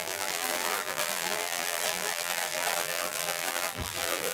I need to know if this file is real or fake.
fake